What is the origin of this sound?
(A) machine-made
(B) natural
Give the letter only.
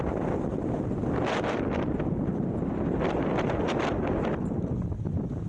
B